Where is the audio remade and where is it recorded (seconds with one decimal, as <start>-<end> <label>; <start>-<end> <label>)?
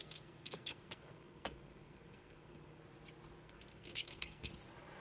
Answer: 0.0-2.8 remade; 2.8-3.4 recorded; 3.4-4.5 remade; 4.5-5.0 recorded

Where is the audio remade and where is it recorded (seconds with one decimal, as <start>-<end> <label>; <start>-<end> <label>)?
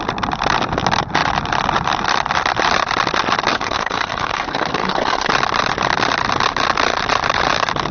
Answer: 0.0-3.5 recorded; 3.5-5.3 remade; 5.3-7.9 recorded